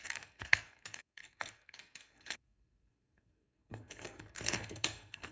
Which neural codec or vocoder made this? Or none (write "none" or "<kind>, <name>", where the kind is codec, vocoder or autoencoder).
codec, SNAC